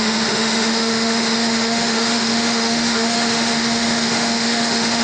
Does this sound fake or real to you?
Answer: fake